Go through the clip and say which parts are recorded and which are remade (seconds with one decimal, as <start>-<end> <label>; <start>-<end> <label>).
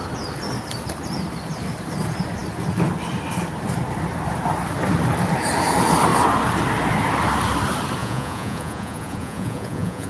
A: 0.0-8.0 recorded; 8.0-10.1 remade